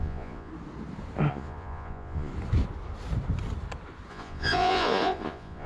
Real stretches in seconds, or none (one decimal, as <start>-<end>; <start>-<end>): 0.5-1.3; 2.3-4.1